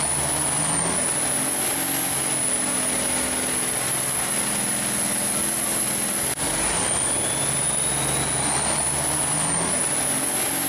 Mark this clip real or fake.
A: real